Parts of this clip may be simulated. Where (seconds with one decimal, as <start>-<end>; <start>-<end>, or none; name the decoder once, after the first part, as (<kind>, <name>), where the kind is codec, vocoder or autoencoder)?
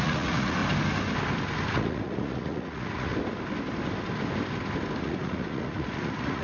0.0-0.6 (vocoder, Vocos); 1.7-3.1; 5.0-6.4